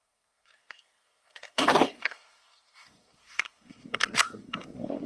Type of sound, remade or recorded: remade